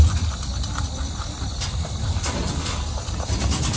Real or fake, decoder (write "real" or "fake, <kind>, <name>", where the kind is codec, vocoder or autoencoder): real